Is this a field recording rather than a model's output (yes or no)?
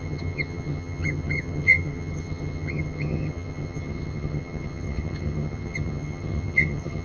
no